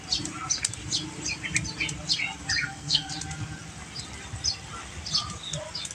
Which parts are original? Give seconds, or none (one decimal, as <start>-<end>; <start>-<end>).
0.0-2.6; 3.1-5.9